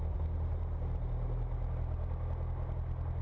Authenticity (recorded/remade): recorded